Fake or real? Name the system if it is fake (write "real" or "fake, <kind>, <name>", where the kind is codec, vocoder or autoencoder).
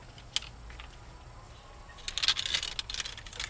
real